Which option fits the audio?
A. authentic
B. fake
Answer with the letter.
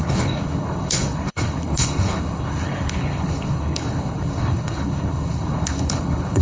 B